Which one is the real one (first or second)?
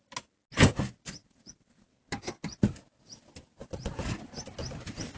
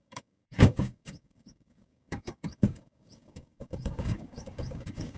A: first